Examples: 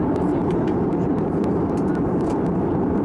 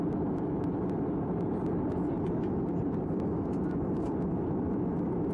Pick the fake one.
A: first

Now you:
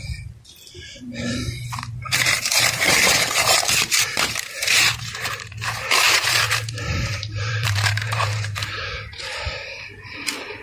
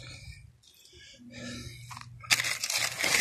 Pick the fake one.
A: first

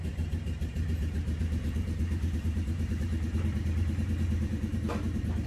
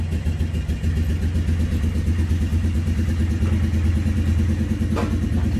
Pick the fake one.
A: first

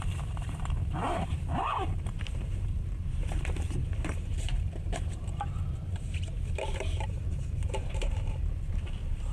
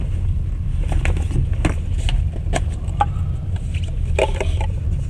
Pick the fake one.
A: first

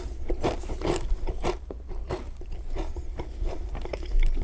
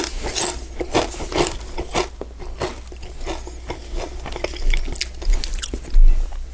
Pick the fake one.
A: first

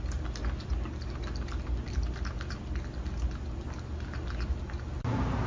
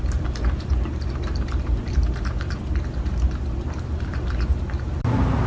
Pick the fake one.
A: second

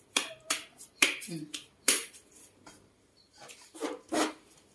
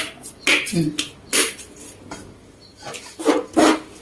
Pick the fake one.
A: first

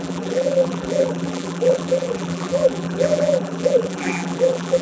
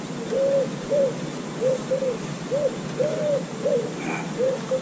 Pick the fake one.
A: first